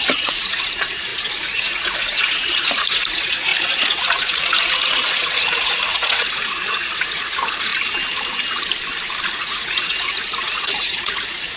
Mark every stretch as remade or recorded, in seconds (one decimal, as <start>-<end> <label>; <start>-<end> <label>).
0.0-7.7 remade; 7.7-9.4 recorded; 9.4-11.6 remade